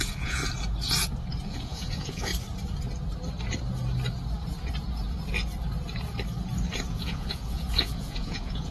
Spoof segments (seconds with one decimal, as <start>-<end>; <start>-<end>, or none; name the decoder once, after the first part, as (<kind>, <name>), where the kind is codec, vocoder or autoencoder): 0.0-0.4 (vocoder, Vocos); 1.5-2.3; 6.9-8.7